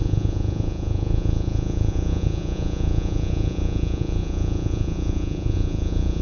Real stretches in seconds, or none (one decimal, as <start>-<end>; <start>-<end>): none